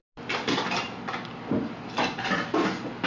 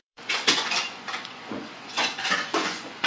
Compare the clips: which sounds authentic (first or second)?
first